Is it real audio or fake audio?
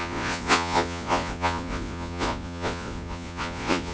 fake